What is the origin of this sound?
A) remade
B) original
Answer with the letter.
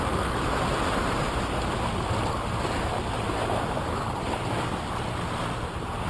B